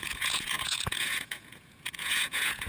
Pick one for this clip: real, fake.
fake